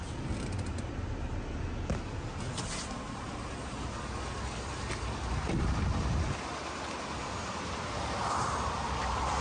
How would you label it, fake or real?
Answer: real